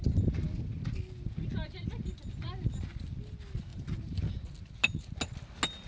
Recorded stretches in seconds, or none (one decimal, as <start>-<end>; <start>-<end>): 0.0-3.7; 4.3-5.9